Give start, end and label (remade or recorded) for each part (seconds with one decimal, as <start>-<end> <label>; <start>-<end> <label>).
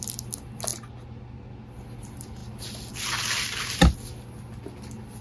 0.0-5.2 recorded